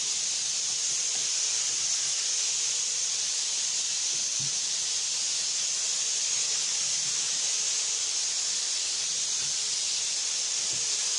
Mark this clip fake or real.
real